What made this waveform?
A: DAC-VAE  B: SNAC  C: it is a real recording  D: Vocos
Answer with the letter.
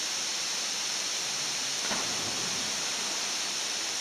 C